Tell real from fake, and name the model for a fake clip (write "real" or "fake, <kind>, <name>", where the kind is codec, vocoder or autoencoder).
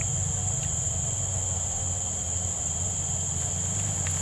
real